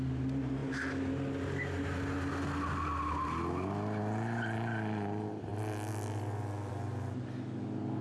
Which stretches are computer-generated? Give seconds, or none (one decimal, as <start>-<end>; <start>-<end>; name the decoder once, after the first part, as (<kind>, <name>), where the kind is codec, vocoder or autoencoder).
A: none